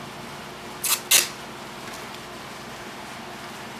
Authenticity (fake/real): real